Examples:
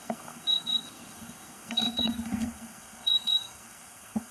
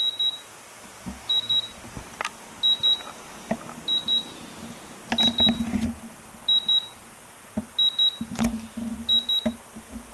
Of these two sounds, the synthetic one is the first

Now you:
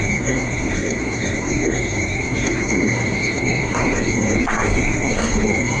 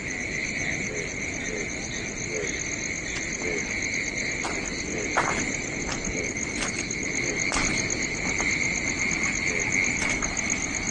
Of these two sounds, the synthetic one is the first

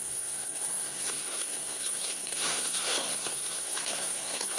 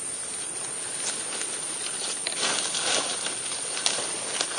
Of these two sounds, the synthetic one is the first